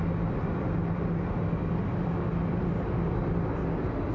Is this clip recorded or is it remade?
recorded